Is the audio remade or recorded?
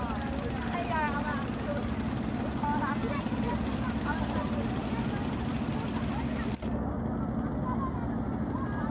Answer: recorded